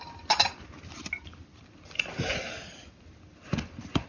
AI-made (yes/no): no